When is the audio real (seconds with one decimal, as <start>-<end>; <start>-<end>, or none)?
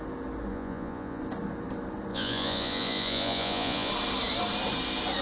0.0-0.5; 1.2-2.1; 3.9-5.2